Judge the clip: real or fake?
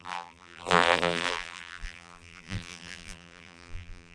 fake